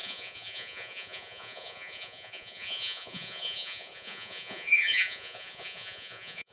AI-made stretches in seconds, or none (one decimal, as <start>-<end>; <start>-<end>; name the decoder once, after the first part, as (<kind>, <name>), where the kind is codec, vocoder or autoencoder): 0.0-6.5 (vocoder, Vocos)